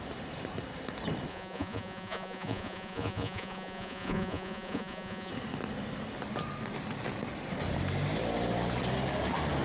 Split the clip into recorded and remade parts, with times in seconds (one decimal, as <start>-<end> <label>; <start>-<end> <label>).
0.0-1.3 recorded; 1.3-5.3 remade; 5.3-9.6 recorded